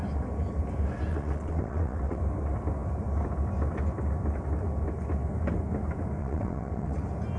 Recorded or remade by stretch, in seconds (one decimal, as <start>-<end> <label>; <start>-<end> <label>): 0.0-1.1 recorded; 1.1-2.2 remade; 2.2-6.2 recorded; 6.2-7.0 remade; 7.0-7.4 recorded